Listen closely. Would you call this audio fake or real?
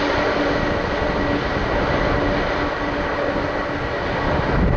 real